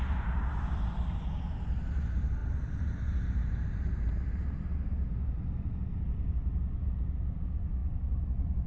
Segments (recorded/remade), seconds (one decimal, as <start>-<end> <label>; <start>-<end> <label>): 0.0-8.7 recorded